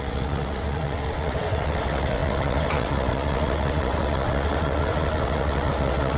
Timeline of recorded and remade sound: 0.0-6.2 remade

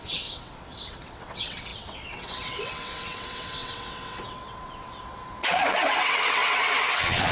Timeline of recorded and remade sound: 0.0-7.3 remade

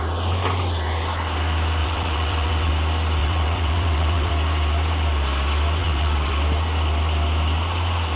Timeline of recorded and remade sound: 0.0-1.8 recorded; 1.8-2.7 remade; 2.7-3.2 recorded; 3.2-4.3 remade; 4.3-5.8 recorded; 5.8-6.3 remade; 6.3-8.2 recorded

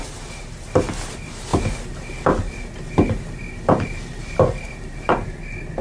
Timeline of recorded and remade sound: 0.0-5.8 recorded

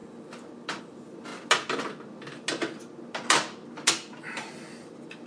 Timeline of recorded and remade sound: 0.0-5.3 recorded